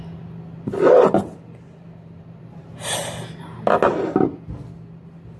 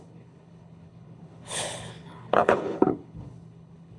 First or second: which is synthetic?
second